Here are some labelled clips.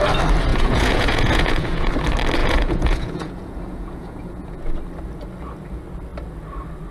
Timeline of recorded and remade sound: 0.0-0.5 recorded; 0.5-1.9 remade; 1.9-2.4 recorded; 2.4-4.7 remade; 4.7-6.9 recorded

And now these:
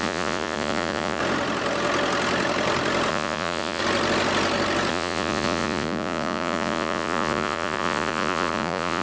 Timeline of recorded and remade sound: 0.0-1.2 remade; 1.2-3.1 recorded; 3.1-3.8 remade; 3.8-4.9 recorded; 4.9-9.0 remade

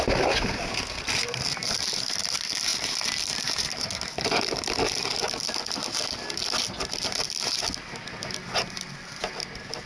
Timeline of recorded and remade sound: 0.0-9.9 recorded

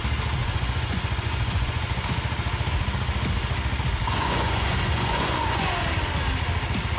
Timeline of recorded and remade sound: 0.0-0.4 recorded; 0.4-2.1 remade; 2.1-4.0 recorded; 4.0-5.7 remade; 5.7-7.0 recorded

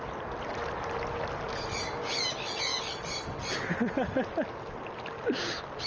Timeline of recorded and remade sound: 0.0-5.9 recorded

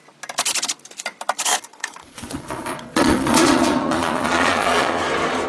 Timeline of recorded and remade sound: 0.0-1.7 recorded; 1.7-5.0 remade; 5.0-5.5 recorded

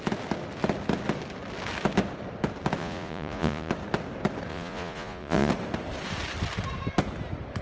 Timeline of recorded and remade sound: 0.0-2.8 recorded; 2.8-3.7 remade; 3.7-4.5 recorded; 4.5-5.5 remade; 5.5-7.6 recorded